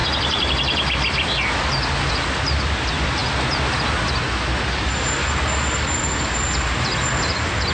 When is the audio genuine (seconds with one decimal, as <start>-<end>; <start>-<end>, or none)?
0.0-7.7